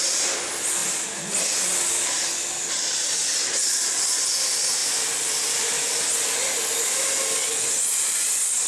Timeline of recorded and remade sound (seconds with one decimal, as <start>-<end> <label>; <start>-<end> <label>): 0.0-8.7 recorded